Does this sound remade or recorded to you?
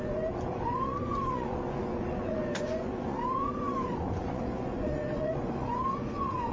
remade